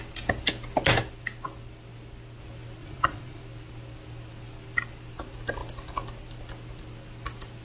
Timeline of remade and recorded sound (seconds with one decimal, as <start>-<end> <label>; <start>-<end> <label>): 0.0-2.8 recorded; 2.8-3.4 remade; 3.4-7.6 recorded